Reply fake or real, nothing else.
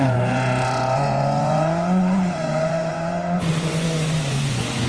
fake